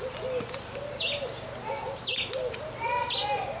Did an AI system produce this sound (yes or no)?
no